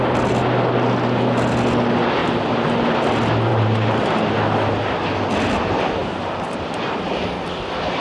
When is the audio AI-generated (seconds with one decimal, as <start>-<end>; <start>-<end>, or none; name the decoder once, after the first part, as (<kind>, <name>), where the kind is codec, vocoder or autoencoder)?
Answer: 2.2-2.8 (vocoder, BigVGAN v2); 3.5-4.3; 6.0-7.1